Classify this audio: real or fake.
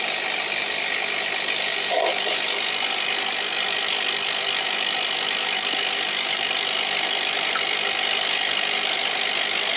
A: real